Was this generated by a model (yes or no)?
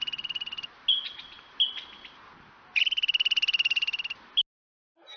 no